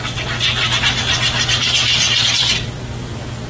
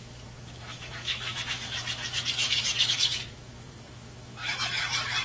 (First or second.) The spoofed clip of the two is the second